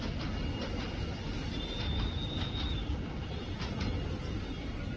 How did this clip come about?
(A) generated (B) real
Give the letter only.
B